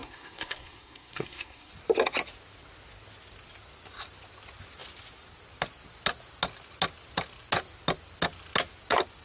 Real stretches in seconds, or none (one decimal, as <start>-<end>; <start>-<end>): 1.7-9.2